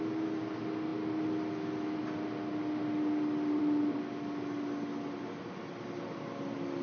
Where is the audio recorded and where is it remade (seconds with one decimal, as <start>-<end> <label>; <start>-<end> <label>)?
0.0-6.8 recorded